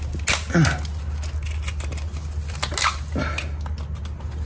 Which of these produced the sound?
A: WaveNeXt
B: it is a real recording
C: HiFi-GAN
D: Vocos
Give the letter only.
B